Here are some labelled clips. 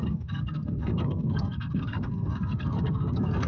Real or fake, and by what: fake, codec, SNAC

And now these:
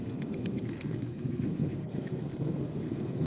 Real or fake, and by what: fake, codec, SNAC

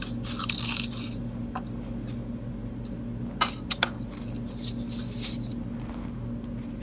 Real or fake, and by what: real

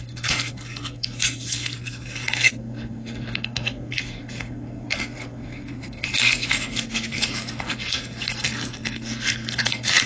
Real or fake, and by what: fake, codec, SNAC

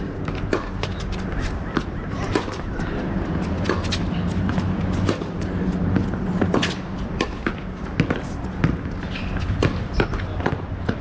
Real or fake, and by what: real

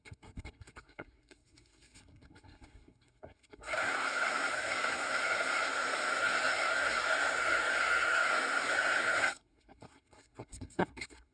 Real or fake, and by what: fake, codec, SNAC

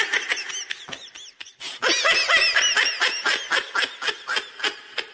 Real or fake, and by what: real